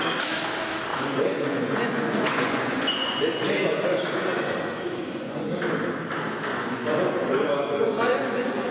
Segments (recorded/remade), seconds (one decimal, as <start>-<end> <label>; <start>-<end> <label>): 0.0-0.9 recorded; 0.9-5.6 remade; 5.6-6.5 recorded; 6.5-8.7 remade